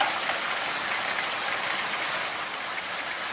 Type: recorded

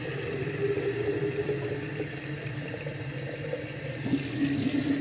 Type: recorded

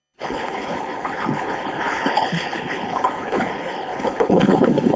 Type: remade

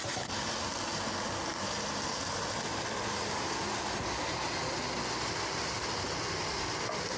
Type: recorded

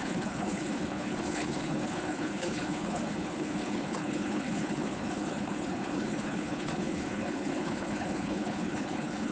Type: remade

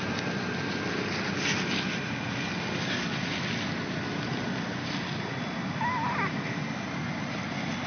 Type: recorded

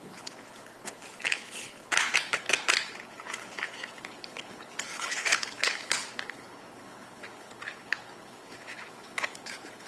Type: remade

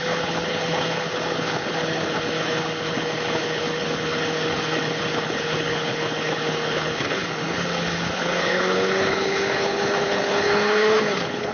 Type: remade